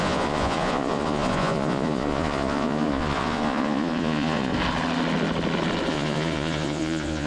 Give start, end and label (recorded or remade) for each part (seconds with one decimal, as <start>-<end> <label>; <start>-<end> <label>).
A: 0.0-4.5 remade; 4.5-5.9 recorded; 5.9-7.3 remade